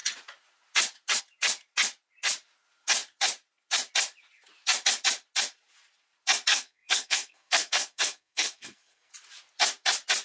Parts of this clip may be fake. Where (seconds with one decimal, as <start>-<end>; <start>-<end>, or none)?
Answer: 6.5-9.1